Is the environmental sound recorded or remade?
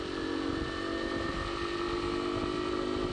recorded